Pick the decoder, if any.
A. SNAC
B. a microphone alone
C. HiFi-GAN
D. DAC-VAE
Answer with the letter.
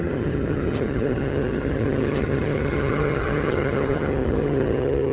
C